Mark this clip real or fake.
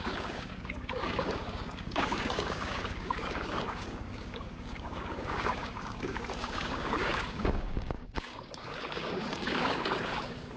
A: fake